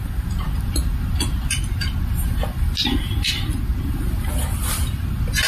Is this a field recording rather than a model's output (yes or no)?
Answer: yes